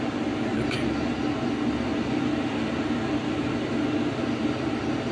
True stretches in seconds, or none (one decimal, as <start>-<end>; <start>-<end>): 0.0-0.5; 1.1-5.1